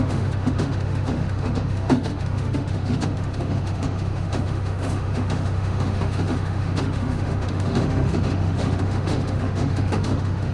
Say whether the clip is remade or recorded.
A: remade